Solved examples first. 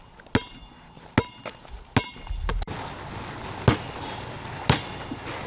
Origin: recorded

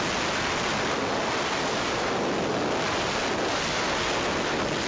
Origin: recorded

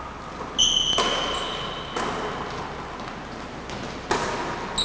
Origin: recorded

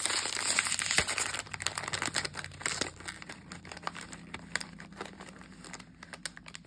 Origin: recorded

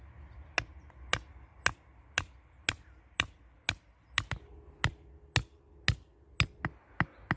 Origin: recorded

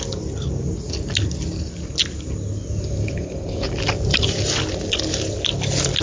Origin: recorded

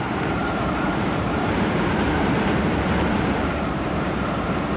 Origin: remade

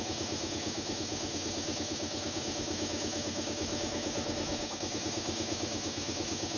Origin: remade